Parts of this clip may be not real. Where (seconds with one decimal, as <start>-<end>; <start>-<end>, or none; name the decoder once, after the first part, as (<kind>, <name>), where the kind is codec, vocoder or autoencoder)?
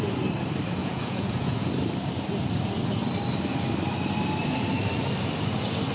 0.8-1.7 (vocoder, Vocos)